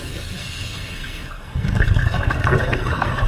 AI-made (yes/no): yes